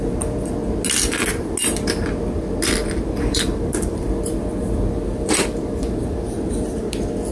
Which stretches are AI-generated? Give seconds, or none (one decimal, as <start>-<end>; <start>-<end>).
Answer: 2.8-7.3